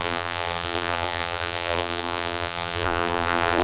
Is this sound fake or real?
fake